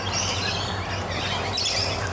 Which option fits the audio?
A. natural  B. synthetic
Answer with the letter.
A